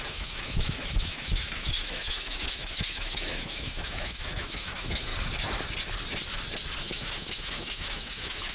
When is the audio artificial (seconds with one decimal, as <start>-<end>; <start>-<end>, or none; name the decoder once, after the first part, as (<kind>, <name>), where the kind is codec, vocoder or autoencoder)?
0.0-5.1 (autoencoder, DAC-VAE); 6.8-8.5